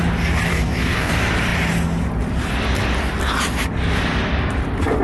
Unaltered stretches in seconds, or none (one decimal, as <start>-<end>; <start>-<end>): 0.0-0.5; 1.1-5.0